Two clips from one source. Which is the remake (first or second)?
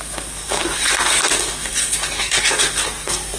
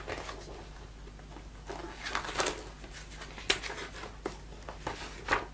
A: first